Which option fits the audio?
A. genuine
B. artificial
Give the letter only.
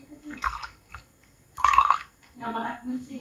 B